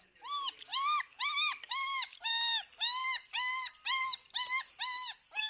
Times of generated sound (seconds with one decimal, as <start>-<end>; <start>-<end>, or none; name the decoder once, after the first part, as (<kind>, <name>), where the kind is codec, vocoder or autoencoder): none